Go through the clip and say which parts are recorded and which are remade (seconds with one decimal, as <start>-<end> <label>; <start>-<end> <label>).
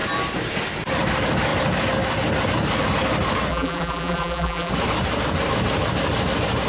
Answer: 0.0-3.5 recorded; 3.5-4.7 remade; 4.7-6.7 recorded